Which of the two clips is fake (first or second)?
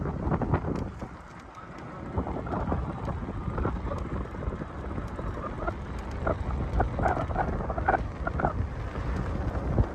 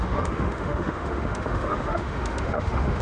second